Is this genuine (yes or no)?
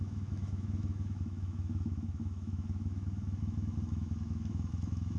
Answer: no